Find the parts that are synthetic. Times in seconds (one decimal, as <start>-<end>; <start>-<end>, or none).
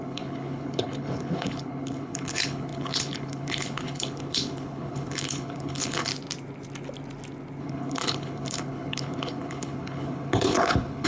0.0-6.1; 7.6-11.1